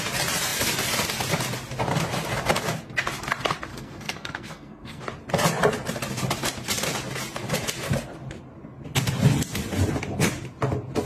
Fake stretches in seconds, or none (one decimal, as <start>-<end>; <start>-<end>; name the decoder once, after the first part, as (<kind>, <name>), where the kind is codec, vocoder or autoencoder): 3.7-5.0 (codec, SNAC)